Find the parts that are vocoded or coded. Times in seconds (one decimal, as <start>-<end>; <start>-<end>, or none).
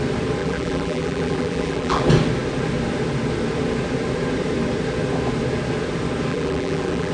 0.4-2.0; 6.3-7.1